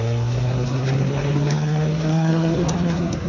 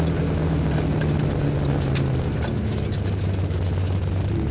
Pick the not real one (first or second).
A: first